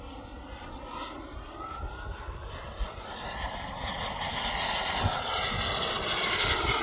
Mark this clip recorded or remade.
recorded